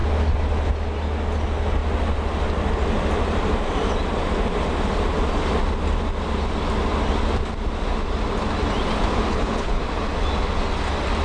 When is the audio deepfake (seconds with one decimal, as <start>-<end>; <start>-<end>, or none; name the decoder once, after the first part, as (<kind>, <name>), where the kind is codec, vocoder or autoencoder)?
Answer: 9.3-9.8 (codec, HILCodec)